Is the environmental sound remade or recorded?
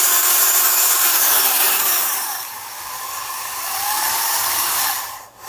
remade